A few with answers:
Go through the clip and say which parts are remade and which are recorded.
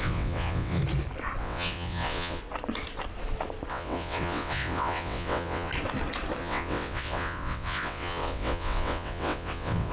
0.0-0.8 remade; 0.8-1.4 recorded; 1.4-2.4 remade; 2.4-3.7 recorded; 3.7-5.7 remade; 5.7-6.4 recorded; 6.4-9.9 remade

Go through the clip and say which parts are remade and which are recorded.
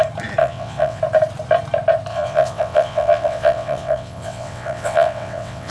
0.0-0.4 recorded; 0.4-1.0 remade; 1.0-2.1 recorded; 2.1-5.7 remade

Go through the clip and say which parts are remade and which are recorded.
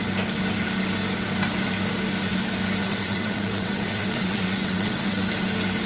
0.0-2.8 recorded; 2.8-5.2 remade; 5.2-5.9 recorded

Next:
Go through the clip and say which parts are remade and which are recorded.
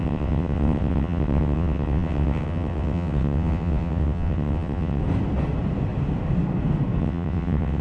0.0-5.0 remade; 5.0-7.0 recorded; 7.0-7.8 remade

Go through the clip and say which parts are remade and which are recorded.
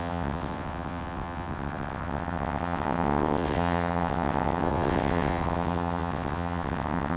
0.0-7.2 remade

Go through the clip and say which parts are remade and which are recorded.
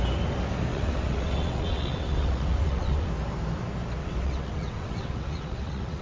0.0-0.7 recorded; 0.7-3.1 remade; 3.1-4.0 recorded; 4.0-6.0 remade